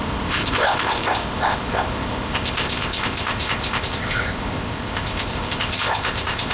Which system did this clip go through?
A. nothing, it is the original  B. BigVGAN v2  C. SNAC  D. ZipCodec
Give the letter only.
D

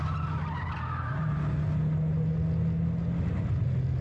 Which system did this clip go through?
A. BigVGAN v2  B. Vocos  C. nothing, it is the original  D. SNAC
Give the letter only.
C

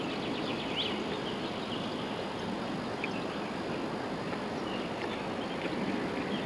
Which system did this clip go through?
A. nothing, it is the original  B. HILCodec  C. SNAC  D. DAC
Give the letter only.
A